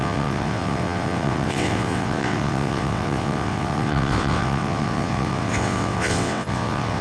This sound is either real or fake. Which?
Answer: fake